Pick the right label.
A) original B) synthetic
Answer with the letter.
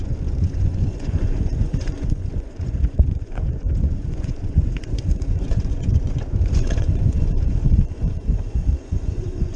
B